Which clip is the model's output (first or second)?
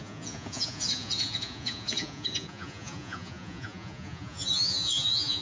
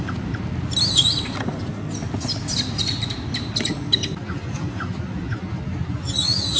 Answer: first